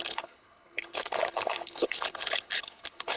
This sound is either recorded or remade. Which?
remade